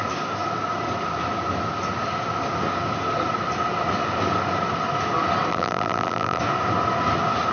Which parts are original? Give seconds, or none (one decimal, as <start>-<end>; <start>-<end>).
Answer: 0.0-5.5; 6.4-7.5